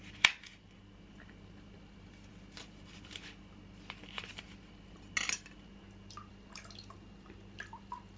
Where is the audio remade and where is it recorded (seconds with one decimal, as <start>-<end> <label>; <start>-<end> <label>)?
0.0-8.2 recorded